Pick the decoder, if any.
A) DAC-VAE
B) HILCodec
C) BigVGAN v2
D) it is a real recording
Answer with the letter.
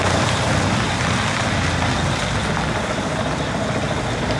D